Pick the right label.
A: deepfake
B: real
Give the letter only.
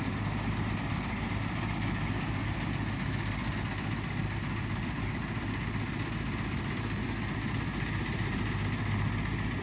B